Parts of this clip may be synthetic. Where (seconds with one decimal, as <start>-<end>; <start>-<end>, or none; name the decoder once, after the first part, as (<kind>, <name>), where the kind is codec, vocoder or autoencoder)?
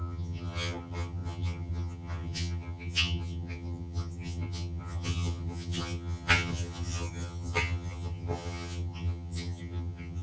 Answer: 0.0-10.2 (vocoder, HiFi-GAN)